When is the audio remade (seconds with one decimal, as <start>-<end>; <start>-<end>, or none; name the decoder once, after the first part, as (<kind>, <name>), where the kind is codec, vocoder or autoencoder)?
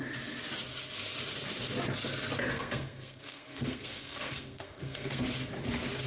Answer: 2.5-5.2 (codec, SNAC)